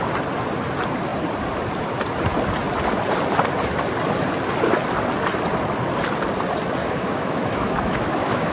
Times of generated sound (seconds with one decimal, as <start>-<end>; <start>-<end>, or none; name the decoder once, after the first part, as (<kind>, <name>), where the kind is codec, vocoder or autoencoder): 6.8-8.5 (autoencoder, DAC-VAE)